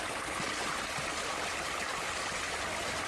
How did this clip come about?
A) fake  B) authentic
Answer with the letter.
B